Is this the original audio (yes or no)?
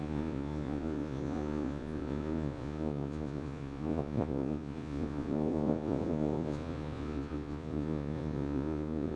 no